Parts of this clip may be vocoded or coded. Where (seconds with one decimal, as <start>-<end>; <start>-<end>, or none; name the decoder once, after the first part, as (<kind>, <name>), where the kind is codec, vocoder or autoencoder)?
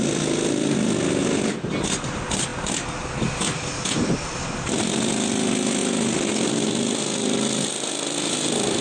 none